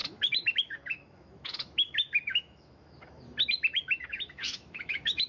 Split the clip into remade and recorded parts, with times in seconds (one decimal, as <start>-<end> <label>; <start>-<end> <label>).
0.0-3.2 remade; 3.2-3.7 recorded; 3.7-5.3 remade